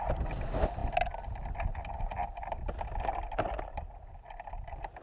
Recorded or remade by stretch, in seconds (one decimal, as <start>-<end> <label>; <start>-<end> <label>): 0.0-5.0 recorded